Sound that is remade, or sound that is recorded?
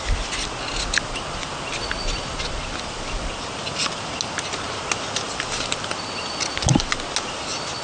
recorded